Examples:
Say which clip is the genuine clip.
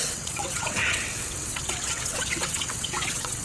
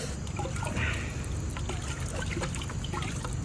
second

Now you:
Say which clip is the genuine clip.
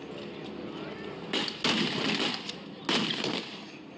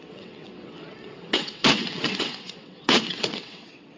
first